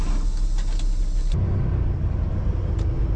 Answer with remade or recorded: recorded